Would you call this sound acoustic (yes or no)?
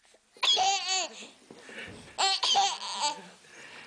yes